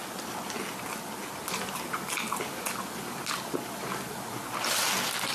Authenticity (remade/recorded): recorded